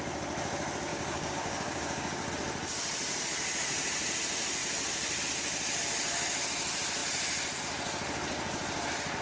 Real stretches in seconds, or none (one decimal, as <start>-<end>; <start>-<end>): 0.0-0.9; 2.3-9.2